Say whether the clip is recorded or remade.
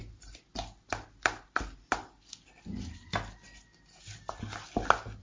recorded